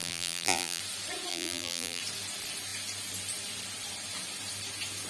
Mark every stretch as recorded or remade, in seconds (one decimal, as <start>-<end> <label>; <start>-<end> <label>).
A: 0.0-0.8 remade; 0.8-1.3 recorded; 1.3-2.0 remade; 2.0-5.1 recorded

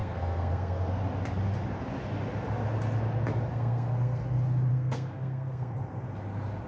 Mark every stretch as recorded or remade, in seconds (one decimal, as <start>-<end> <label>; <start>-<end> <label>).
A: 0.0-1.0 remade; 1.0-3.5 recorded; 3.5-4.2 remade; 4.2-4.7 recorded; 4.7-5.7 remade; 5.7-6.7 recorded

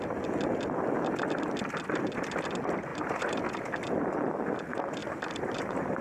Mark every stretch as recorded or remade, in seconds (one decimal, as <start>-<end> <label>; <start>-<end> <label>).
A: 0.0-2.9 recorded; 2.9-3.4 remade; 3.4-5.0 recorded; 5.0-6.0 remade